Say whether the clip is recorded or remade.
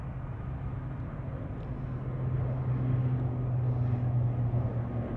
recorded